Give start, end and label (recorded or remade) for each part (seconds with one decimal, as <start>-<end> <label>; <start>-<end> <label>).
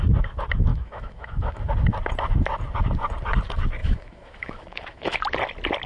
0.0-0.7 recorded; 0.7-1.6 remade; 1.6-3.8 recorded; 3.8-5.2 remade; 5.2-5.9 recorded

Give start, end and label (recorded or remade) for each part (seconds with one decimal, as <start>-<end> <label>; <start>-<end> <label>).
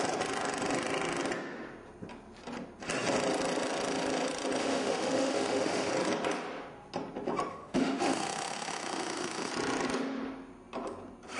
0.0-4.6 recorded; 4.6-5.9 remade; 5.9-7.5 recorded; 7.5-9.5 remade; 9.5-11.4 recorded